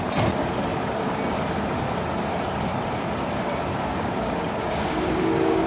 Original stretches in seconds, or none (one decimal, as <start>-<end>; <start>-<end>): 0.0-3.7